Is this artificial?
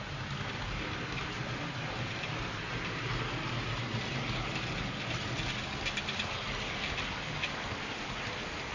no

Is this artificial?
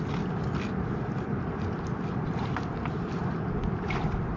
no